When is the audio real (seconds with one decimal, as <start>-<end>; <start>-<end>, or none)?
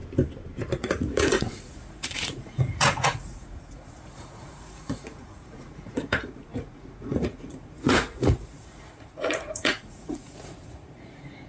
0.0-0.8